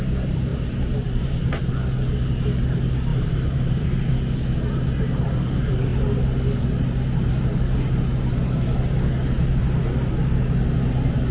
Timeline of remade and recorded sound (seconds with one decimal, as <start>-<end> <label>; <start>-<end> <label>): 0.0-0.5 recorded; 0.5-1.6 remade; 1.6-3.1 recorded; 3.1-4.1 remade; 4.1-11.3 recorded